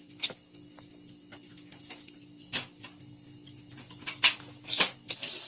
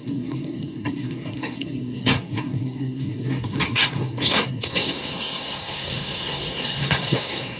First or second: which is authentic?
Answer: first